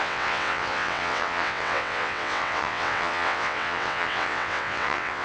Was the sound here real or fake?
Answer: fake